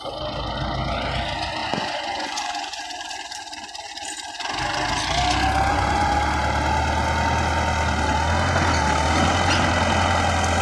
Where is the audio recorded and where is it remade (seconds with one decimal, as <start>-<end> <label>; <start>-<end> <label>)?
0.0-1.6 recorded; 1.6-2.8 remade; 2.8-5.7 recorded; 5.7-6.2 remade; 6.2-10.6 recorded